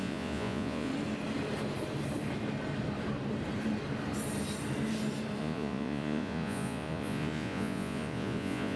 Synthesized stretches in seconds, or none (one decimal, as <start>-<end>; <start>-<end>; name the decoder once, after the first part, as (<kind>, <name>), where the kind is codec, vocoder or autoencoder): 0.0-0.9 (vocoder, Vocos); 5.4-8.8